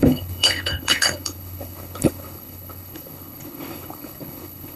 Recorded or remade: remade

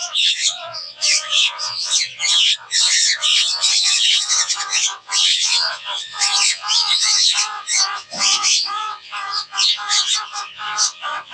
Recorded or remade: remade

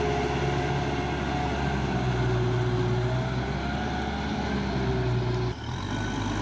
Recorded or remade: recorded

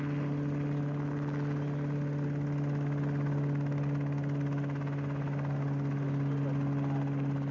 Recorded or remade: recorded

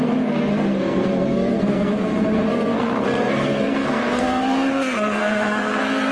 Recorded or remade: remade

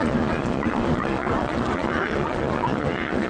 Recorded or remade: remade